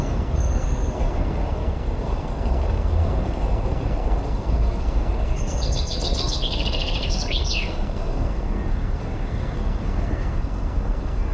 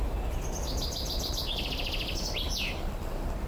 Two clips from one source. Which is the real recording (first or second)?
second